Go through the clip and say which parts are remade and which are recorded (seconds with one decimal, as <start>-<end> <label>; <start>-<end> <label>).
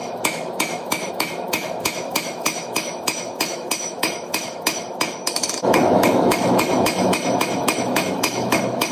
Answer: 0.0-8.9 remade